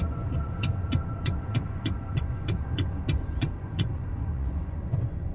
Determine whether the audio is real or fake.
fake